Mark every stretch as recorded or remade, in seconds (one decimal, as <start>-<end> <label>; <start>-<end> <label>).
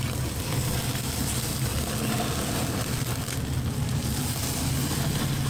0.0-5.5 recorded